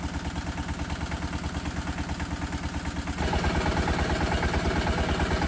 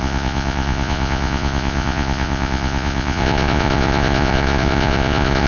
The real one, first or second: first